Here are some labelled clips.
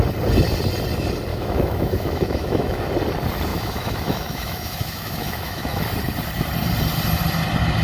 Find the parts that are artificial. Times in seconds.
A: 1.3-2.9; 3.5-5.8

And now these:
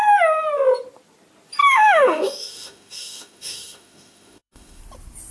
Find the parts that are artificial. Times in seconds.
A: 1.6-4.8